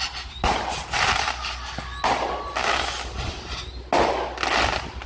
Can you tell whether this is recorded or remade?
recorded